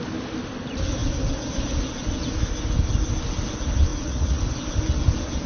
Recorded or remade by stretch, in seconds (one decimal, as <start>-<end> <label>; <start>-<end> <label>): 0.0-3.9 recorded; 3.9-4.4 remade; 4.4-5.5 recorded